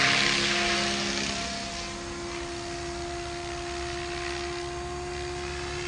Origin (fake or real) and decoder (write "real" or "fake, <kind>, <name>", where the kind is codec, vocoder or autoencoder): real